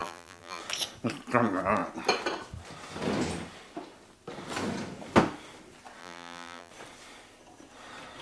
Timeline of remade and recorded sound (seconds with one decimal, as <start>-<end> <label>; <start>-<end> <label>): 0.0-0.6 remade; 0.6-6.0 recorded; 6.0-6.7 remade; 6.7-8.2 recorded